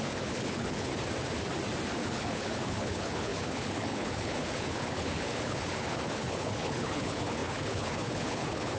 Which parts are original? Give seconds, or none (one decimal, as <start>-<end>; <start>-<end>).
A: 0.9-2.0